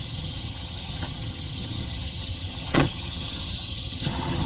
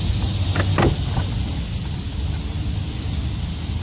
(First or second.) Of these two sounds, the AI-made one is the first